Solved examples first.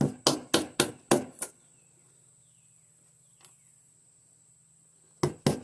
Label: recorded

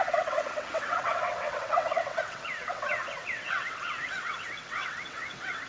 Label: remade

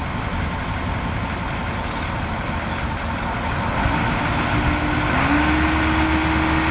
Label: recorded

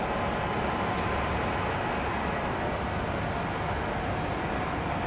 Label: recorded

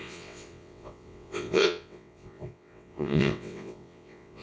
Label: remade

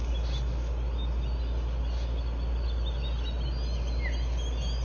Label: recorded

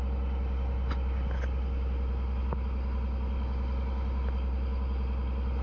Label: recorded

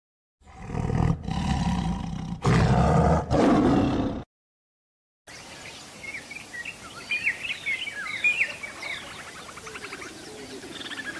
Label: recorded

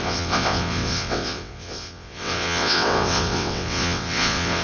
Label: remade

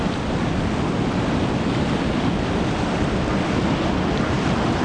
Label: recorded